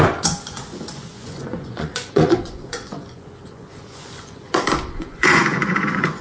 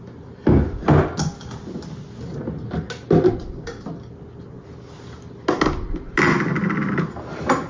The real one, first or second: second